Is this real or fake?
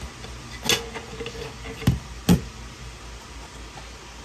real